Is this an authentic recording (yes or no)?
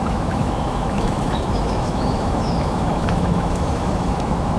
no